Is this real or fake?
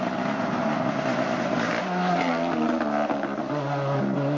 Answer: real